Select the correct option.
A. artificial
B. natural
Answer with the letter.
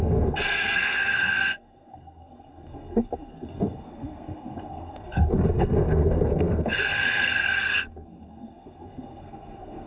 A